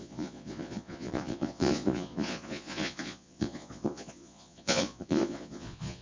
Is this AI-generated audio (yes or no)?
yes